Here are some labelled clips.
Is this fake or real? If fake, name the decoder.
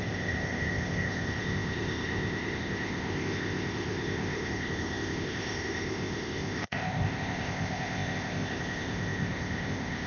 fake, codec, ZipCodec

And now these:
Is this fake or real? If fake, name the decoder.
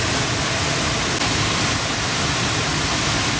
real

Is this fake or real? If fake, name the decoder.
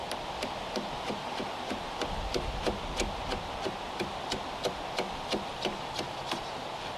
real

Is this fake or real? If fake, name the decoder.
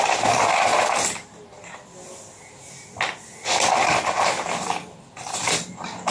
real